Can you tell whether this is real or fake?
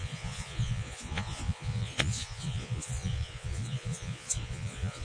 fake